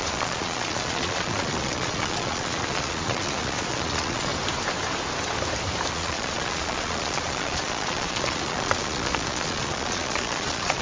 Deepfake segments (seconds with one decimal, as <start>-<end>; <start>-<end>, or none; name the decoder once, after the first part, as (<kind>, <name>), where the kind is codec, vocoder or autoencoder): 0.0-4.3 (vocoder, Vocos); 5.9-10.8